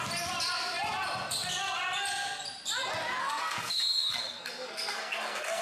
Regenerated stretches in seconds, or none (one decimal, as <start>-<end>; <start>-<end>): 3.2-5.6

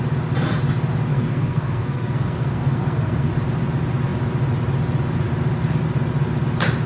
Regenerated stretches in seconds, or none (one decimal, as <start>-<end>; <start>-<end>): 1.1-3.3

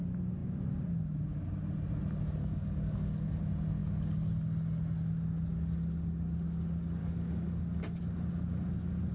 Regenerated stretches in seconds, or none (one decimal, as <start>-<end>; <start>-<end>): 2.4-3.4; 3.8-4.3; 7.0-7.6

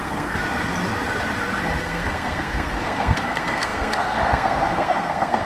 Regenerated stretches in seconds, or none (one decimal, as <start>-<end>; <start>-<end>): 0.0-0.4; 1.8-5.5